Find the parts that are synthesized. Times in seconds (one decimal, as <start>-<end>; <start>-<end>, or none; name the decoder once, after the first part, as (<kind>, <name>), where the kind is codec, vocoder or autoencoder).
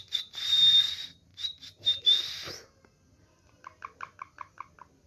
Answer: 1.3-2.0 (vocoder, BigVGAN v2)